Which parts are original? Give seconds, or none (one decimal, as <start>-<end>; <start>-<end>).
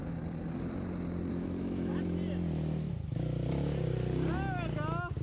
0.0-1.3; 1.9-5.2